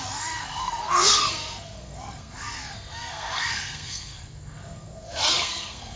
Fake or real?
fake